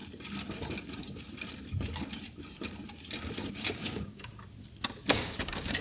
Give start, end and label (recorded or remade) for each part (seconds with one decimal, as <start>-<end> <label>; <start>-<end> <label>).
0.0-3.5 recorded; 3.5-4.3 remade; 4.3-5.1 recorded; 5.1-5.8 remade